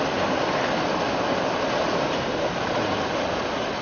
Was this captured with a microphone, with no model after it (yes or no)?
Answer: yes